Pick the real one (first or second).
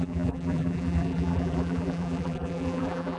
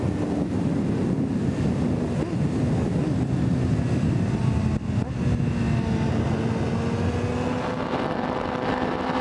second